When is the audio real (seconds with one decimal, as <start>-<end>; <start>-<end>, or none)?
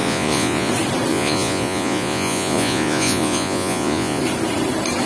0.7-1.1; 4.2-5.1